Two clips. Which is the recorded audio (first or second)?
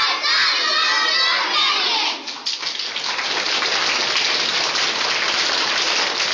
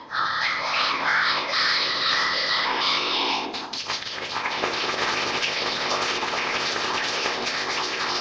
first